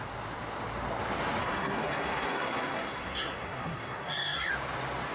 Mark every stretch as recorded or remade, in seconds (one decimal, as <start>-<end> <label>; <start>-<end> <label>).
0.0-1.4 recorded; 1.4-4.5 remade; 4.5-5.1 recorded